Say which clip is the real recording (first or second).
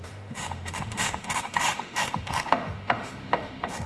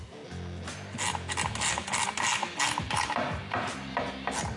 second